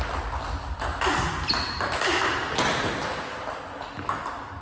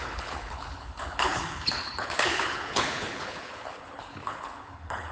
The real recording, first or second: first